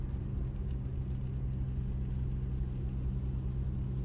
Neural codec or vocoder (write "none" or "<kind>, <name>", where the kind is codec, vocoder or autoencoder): none